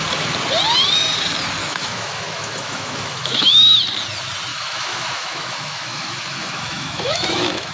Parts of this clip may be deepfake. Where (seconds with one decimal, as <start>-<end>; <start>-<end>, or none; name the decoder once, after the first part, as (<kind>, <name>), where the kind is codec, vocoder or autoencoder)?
1.6-3.8 (autoencoder, DAC-VAE); 4.5-7.7

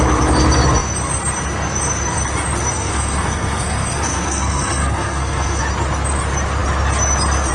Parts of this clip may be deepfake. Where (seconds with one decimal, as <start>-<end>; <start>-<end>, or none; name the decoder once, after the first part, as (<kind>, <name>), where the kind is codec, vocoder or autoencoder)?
2.8-5.6 (codec, SNAC)